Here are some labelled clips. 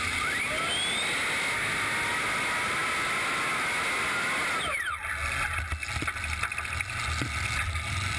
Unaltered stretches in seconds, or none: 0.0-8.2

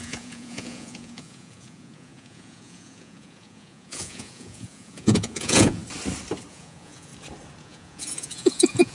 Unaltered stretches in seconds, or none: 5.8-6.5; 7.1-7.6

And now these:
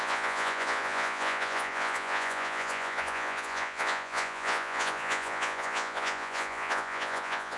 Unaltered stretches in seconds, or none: none

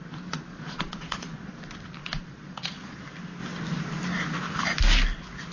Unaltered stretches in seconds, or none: 0.0-0.5; 1.5-2.0; 3.0-5.5

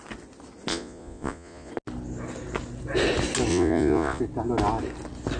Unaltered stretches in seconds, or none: 0.0-0.7; 1.7-3.5; 4.2-5.4